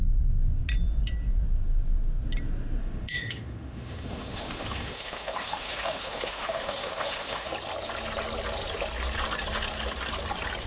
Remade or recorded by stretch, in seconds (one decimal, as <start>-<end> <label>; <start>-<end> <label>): 0.0-2.8 recorded; 2.8-7.5 remade; 7.5-10.7 recorded